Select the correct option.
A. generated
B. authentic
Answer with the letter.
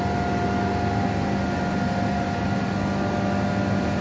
B